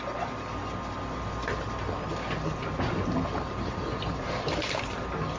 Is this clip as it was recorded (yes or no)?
yes